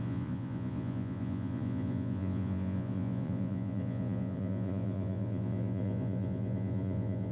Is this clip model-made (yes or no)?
yes